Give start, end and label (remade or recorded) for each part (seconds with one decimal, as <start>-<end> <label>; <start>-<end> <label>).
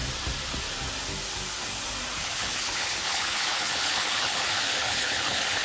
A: 0.0-2.2 recorded; 2.2-5.6 remade